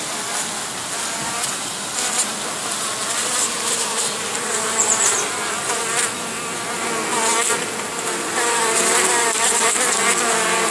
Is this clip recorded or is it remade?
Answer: recorded